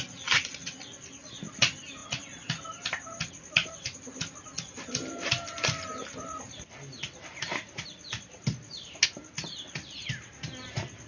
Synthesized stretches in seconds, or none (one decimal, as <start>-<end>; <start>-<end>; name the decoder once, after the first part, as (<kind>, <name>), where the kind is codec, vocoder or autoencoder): none